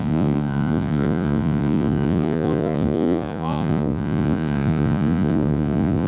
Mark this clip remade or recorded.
remade